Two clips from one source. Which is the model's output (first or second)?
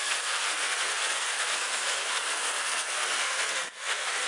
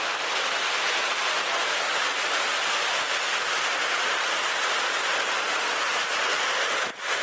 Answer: first